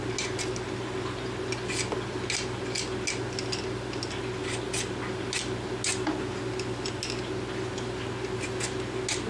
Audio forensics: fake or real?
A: real